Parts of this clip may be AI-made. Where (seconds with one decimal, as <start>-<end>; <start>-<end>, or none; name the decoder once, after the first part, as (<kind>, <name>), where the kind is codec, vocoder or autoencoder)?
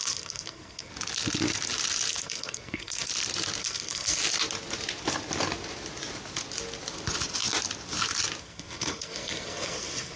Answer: 0.0-0.9 (codec, SNAC); 2.1-3.1; 3.6-4.2; 8.4-10.2